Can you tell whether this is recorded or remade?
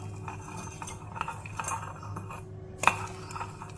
recorded